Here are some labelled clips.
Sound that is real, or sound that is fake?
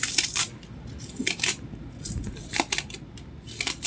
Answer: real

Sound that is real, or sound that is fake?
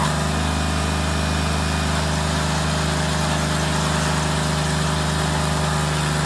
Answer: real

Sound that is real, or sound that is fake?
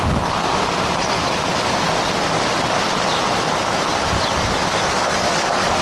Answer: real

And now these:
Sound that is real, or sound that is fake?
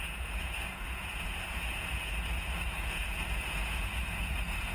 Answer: fake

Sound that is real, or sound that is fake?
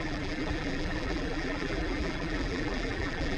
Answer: fake